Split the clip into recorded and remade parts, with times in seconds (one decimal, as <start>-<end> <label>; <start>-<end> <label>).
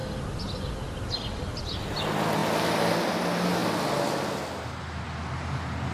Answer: 0.0-5.9 recorded